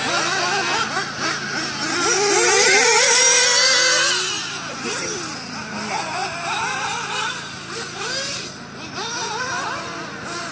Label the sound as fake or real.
real